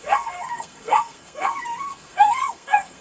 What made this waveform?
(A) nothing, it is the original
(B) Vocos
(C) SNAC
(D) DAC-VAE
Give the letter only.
C